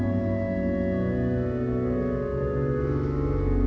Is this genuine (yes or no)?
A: yes